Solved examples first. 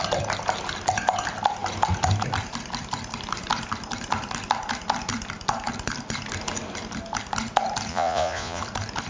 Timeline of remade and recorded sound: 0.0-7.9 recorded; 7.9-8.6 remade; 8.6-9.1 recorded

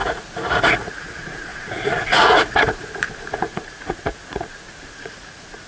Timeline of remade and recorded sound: 0.0-5.7 remade

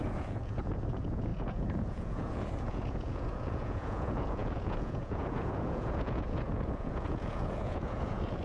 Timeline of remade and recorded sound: 0.0-8.4 remade